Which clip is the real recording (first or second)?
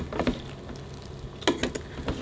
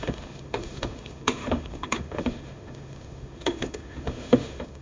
first